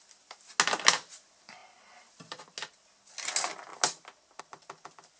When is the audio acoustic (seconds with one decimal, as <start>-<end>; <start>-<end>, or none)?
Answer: 0.0-5.2